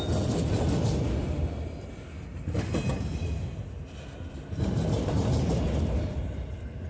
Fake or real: real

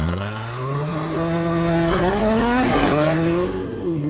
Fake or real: fake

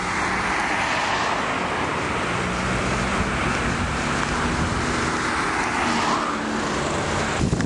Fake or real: real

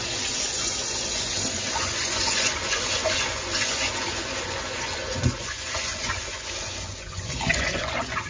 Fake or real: fake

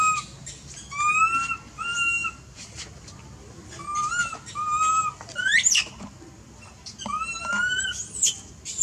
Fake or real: real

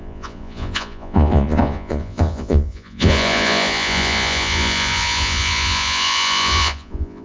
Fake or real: fake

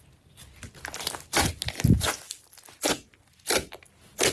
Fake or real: real